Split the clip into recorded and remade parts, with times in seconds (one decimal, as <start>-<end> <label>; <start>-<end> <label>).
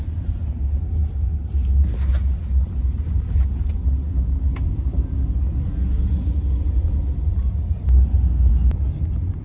0.0-9.4 recorded